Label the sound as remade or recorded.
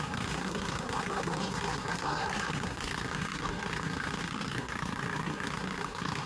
remade